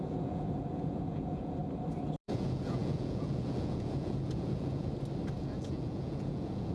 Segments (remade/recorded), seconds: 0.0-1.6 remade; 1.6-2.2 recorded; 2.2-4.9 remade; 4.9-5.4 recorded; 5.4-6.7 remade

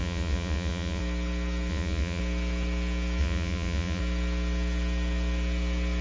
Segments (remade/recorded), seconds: 0.0-1.0 remade; 1.0-1.7 recorded; 1.7-2.2 remade; 2.2-3.2 recorded; 3.2-4.0 remade; 4.0-6.0 recorded